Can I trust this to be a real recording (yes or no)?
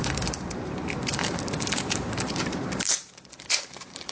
no